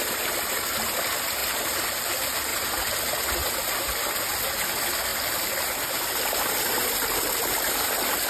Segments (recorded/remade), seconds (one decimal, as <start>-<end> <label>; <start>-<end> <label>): 0.0-1.4 recorded; 1.4-2.1 remade; 2.1-5.1 recorded; 5.1-5.9 remade; 5.9-8.3 recorded